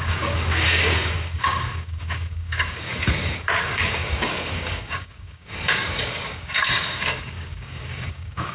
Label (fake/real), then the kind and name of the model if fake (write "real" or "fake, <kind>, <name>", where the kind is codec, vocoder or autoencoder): fake, codec, DAC